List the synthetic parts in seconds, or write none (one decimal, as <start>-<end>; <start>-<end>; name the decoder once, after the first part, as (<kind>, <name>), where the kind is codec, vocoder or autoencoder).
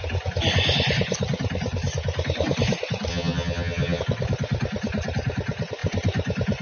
3.1-4.0 (vocoder, HiFi-GAN)